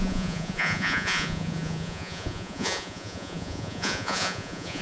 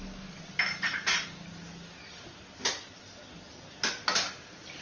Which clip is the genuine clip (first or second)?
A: second